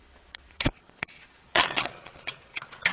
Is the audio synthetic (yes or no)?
yes